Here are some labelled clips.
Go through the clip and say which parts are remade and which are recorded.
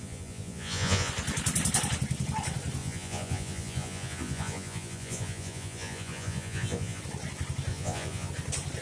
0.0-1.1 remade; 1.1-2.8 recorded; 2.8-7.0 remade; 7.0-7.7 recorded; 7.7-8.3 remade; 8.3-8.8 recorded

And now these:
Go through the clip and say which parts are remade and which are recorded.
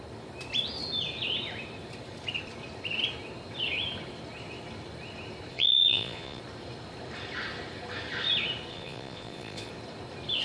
0.0-5.5 recorded; 5.5-6.4 remade; 6.4-8.7 recorded; 8.7-9.7 remade; 9.7-10.4 recorded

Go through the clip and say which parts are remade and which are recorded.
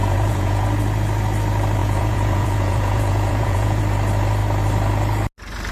0.0-0.6 remade; 0.6-1.8 recorded; 1.8-3.8 remade; 3.8-5.7 recorded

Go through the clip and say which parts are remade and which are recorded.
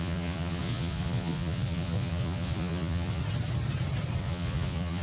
0.0-3.2 remade; 3.2-4.2 recorded; 4.2-5.0 remade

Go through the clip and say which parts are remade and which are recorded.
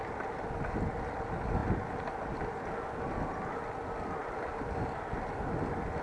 0.0-6.0 recorded